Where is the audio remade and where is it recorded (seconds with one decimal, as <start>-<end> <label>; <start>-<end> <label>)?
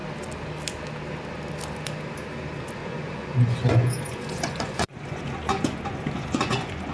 0.0-2.8 recorded; 2.8-6.9 remade